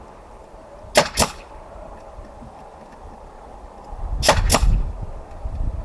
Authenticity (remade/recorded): recorded